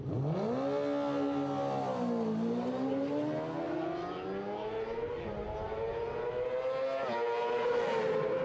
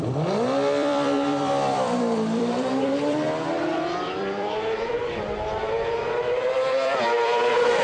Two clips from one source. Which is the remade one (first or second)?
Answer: second